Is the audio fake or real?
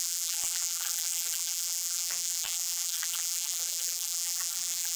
fake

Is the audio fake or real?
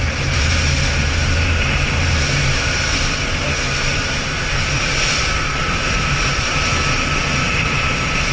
fake